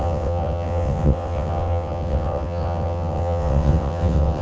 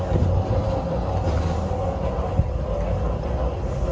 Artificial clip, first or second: first